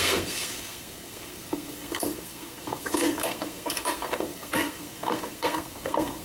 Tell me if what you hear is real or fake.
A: fake